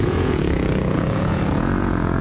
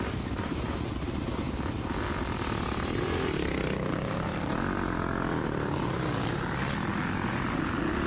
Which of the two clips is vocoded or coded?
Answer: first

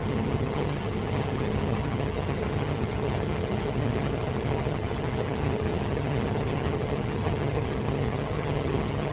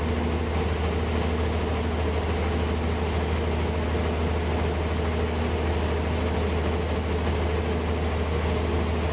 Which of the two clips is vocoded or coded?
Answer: first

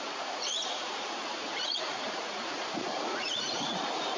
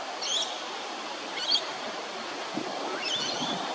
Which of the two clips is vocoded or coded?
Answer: first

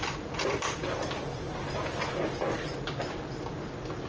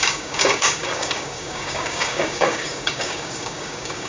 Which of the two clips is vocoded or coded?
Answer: second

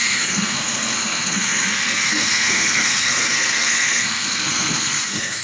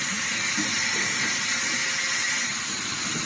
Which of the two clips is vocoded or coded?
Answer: first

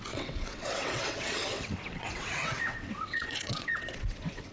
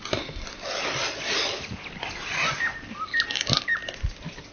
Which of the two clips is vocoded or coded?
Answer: first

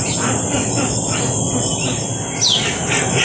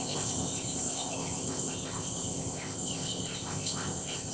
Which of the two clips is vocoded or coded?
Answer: second